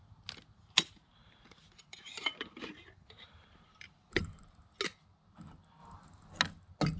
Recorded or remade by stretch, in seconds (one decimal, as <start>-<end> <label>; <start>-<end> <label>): 0.0-1.2 recorded; 1.2-4.4 remade; 4.4-5.8 recorded; 5.8-6.4 remade; 6.4-7.0 recorded